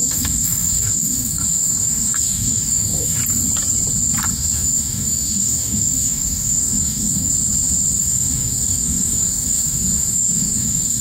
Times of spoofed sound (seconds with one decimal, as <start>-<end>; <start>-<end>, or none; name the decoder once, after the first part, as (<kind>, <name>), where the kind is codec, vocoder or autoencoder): 0.0-3.2 (codec, DAC); 4.3-7.3; 8.0-11.0